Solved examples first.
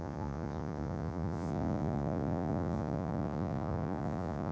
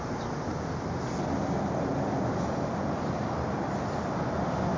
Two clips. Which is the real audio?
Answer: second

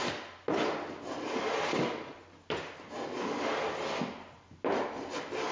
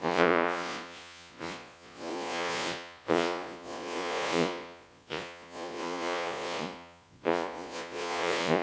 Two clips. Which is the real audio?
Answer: first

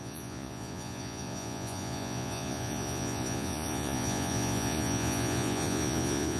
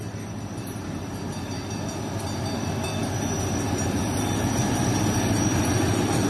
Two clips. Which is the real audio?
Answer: second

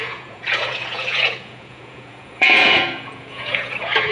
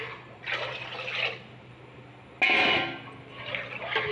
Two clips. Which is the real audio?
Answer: second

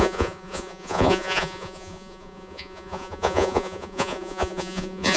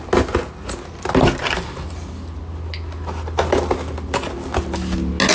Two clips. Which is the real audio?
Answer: second